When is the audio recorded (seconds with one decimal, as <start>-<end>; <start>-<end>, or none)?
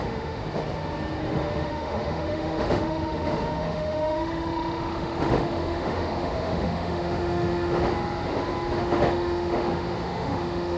0.4-1.2; 7.9-8.8